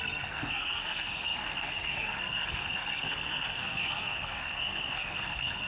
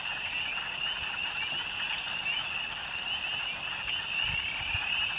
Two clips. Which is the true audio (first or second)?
second